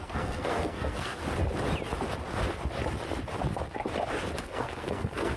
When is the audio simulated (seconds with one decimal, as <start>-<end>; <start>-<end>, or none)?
0.0-1.2; 4.4-5.4